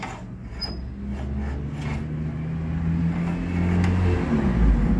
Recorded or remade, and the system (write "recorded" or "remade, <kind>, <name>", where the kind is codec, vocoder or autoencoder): recorded